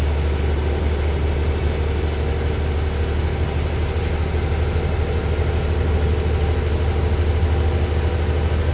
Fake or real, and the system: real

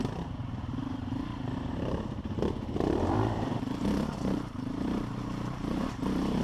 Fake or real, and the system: fake, vocoder, BigVGAN v2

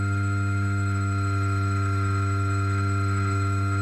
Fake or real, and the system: fake, autoencoder, DAC-VAE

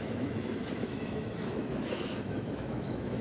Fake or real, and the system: fake, autoencoder, DAC-VAE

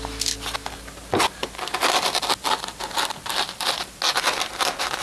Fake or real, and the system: real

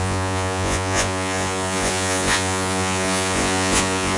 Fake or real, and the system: fake, vocoder, Vocos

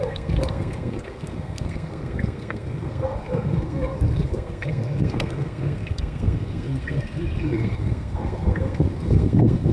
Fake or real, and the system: fake, codec, SNAC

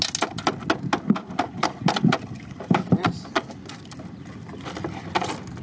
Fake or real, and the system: real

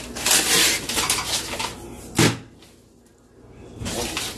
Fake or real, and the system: real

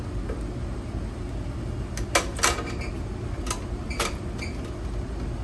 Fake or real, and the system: real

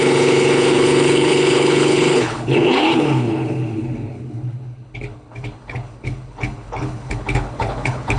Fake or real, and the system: fake, codec, HILCodec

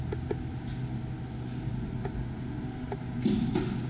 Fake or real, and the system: real